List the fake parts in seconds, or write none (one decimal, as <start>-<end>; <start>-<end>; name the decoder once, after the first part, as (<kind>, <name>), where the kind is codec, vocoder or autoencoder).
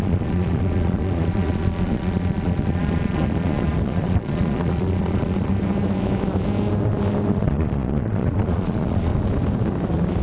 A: 0.0-5.5 (vocoder, Vocos); 7.3-9.1